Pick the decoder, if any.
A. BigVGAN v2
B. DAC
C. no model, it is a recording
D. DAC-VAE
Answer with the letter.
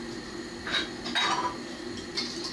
C